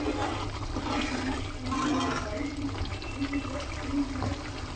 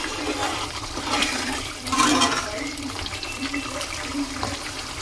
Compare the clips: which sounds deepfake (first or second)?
second